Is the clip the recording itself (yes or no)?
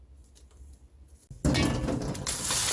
yes